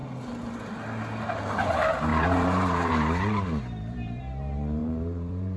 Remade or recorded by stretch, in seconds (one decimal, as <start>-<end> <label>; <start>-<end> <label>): 0.0-2.1 recorded; 2.1-4.2 remade; 4.2-4.8 recorded; 4.8-5.6 remade